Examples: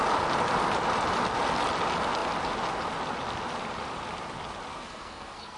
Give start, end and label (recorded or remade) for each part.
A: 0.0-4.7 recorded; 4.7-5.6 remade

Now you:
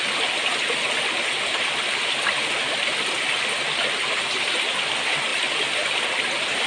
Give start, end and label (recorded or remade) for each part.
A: 0.0-6.7 recorded

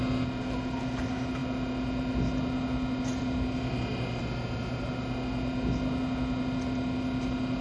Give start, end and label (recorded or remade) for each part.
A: 0.0-7.6 recorded

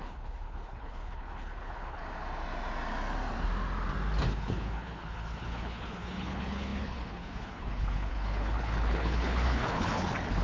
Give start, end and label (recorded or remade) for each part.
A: 0.0-2.0 remade; 2.0-4.3 recorded; 4.3-10.4 remade

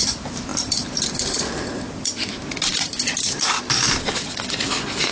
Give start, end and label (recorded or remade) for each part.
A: 0.0-5.1 recorded